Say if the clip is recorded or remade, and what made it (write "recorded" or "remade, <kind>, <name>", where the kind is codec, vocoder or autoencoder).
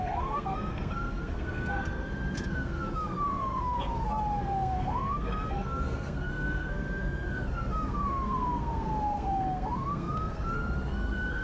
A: remade, codec, SNAC